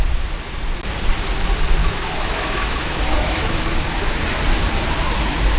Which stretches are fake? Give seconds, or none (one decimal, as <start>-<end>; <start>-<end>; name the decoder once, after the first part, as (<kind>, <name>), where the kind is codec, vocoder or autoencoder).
1.8-3.6 (autoencoder, DAC-VAE)